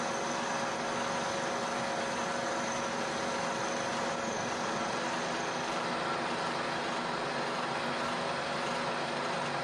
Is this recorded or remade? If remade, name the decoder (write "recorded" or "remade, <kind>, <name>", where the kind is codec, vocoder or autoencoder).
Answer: recorded